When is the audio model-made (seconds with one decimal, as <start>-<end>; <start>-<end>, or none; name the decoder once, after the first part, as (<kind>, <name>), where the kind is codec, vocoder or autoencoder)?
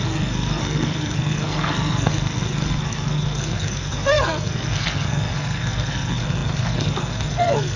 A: 0.0-7.8 (codec, SNAC)